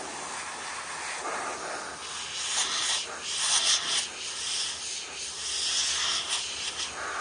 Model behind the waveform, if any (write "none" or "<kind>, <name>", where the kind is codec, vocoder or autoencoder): none